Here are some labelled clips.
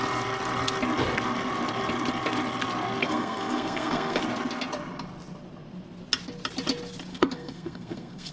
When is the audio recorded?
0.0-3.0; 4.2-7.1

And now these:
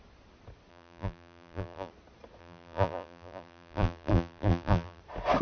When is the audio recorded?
0.0-0.7; 1.9-2.4; 5.0-5.4

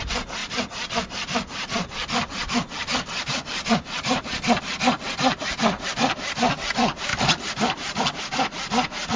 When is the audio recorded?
0.0-0.4; 4.6-7.1; 8.0-9.2

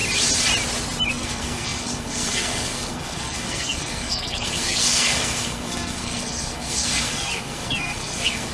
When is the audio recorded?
0.0-1.1

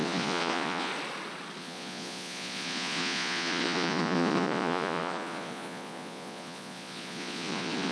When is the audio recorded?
0.9-1.6

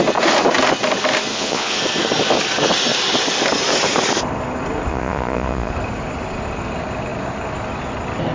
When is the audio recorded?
0.0-1.3; 1.8-4.9; 5.7-8.3

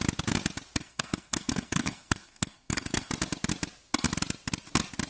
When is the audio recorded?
0.0-0.8; 3.1-5.1

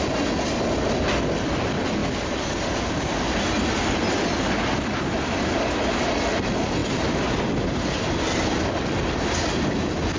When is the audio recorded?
0.0-2.0; 2.5-10.2